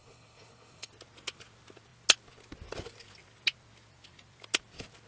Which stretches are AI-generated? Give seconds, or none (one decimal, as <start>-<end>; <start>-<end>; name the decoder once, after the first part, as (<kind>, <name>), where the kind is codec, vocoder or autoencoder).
0.0-0.9 (codec, HILCodec)